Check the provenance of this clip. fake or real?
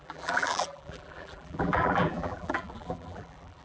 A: fake